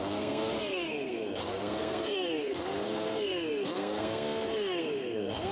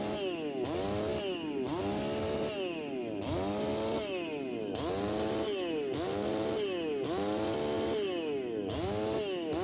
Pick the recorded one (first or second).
second